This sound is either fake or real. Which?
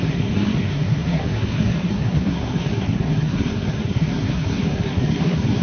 fake